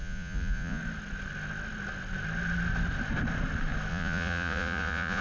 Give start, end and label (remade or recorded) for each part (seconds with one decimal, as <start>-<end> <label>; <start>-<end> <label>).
0.0-0.8 remade; 0.8-3.9 recorded; 3.9-5.2 remade